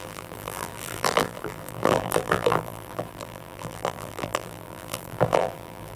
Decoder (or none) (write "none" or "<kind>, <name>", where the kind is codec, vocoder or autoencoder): vocoder, BigVGAN v2